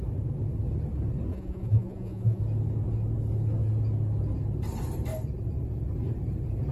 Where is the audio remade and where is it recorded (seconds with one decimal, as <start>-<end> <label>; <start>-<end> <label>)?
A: 0.0-1.3 recorded; 1.3-2.4 remade; 2.4-6.7 recorded